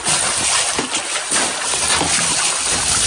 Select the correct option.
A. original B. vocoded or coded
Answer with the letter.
A